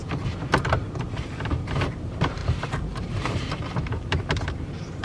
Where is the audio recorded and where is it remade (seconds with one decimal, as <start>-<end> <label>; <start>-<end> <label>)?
0.0-1.0 recorded; 1.0-5.0 remade